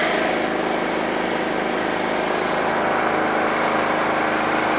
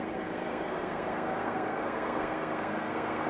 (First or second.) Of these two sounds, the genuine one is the first